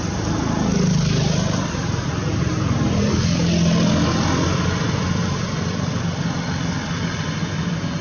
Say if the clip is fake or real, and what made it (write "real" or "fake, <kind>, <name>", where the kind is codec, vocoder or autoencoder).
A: real